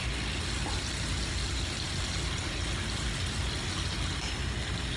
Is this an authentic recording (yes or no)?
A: yes